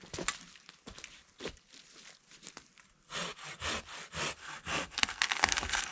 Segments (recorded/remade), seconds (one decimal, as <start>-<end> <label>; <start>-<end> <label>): 0.0-4.4 recorded; 4.4-5.9 remade